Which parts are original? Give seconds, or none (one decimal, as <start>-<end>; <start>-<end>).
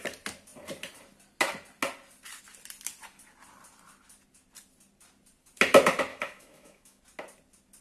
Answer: 0.0-6.1; 7.0-7.8